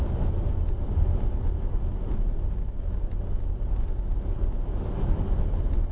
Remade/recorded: recorded